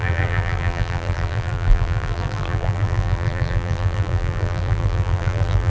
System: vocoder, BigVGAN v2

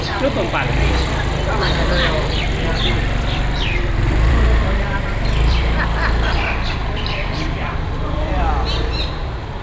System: vocoder, BigVGAN v2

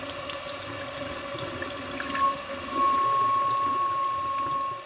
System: none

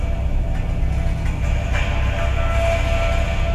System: none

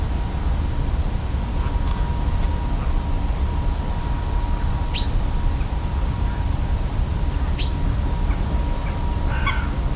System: none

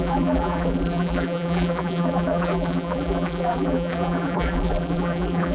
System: vocoder, BigVGAN v2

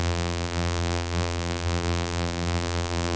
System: vocoder, BigVGAN v2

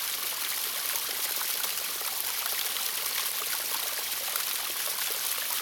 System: none